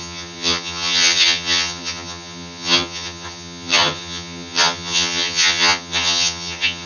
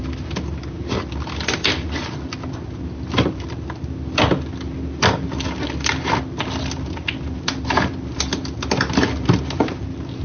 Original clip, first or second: second